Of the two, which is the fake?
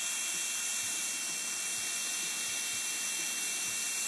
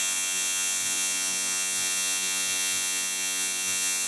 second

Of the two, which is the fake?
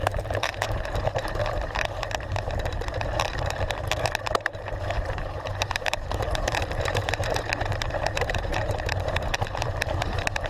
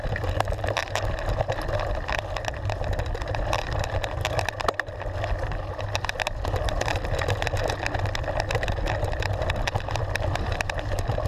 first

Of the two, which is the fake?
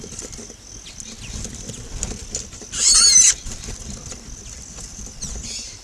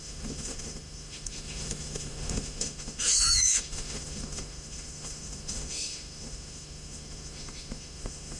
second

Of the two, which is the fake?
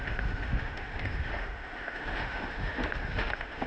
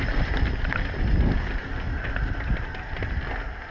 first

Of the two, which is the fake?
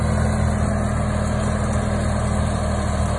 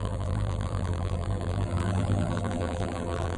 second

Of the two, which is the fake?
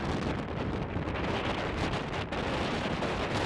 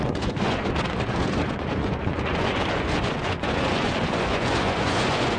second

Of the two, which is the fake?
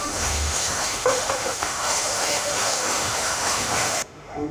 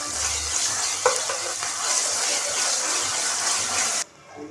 first